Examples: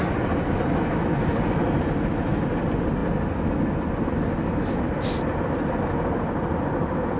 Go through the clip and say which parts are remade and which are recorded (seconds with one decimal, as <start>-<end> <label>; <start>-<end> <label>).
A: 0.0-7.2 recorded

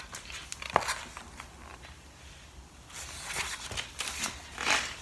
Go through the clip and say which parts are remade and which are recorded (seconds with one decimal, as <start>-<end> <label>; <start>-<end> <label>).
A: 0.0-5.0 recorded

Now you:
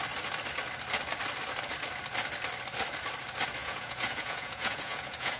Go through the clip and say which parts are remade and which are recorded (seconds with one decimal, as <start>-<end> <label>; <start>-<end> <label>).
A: 0.0-3.6 recorded; 3.6-5.4 remade